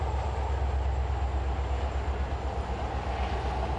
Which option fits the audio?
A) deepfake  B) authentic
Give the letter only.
B